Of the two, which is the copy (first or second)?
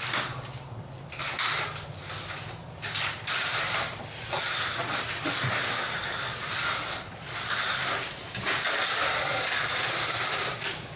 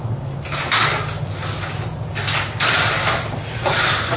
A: first